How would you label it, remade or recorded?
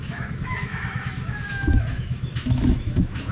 remade